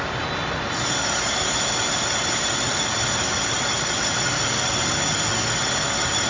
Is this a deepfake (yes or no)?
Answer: no